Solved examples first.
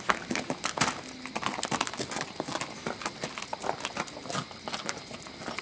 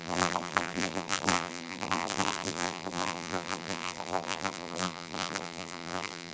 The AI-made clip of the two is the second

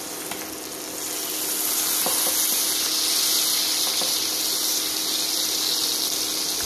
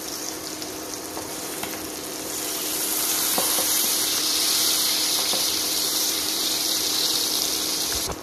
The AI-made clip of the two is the second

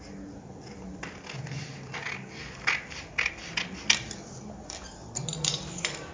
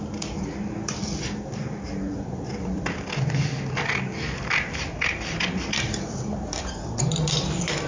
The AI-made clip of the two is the second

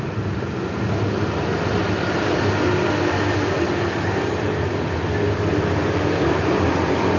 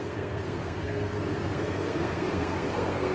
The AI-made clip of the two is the second